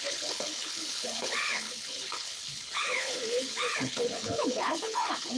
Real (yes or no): no